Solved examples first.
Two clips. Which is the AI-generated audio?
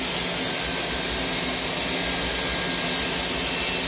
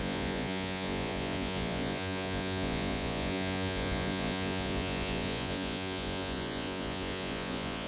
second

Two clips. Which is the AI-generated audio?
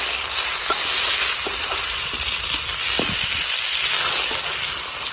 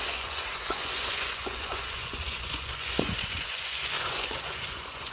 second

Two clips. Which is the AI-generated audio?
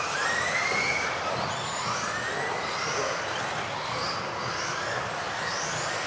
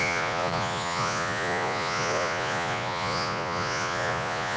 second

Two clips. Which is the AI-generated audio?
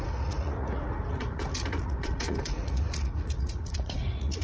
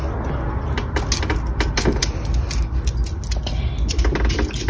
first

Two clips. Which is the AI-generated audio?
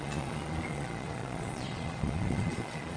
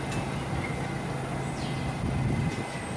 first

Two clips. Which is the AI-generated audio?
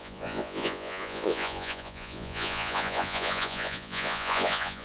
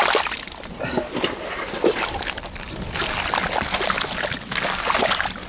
first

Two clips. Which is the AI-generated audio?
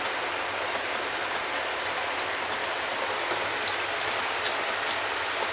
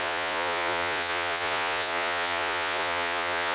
second